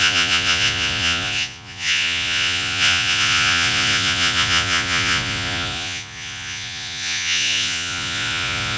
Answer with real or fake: fake